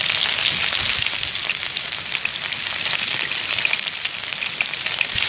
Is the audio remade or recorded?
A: recorded